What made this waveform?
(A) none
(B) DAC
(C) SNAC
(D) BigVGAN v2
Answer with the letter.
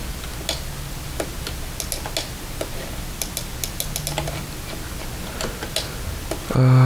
A